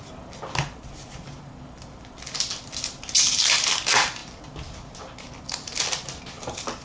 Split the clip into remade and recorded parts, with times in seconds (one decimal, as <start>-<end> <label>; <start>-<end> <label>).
0.0-6.8 recorded

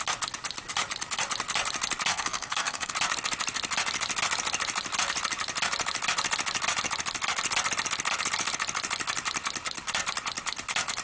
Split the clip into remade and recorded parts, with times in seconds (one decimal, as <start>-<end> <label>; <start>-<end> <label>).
0.0-2.1 recorded; 2.1-2.9 remade; 2.9-11.0 recorded

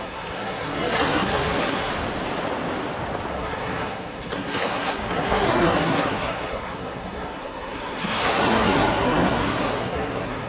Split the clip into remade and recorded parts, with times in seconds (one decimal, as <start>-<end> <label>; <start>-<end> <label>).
0.0-1.9 remade; 1.9-3.3 recorded; 3.3-10.5 remade

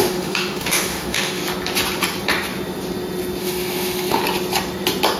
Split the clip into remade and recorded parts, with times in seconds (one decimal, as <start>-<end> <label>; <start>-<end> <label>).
0.0-1.4 remade; 1.4-3.4 recorded; 3.4-4.2 remade; 4.2-5.2 recorded